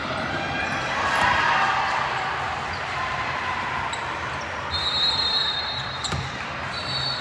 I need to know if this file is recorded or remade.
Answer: remade